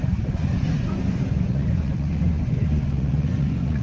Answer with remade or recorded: remade